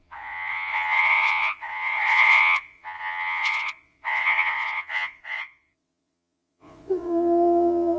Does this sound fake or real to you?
fake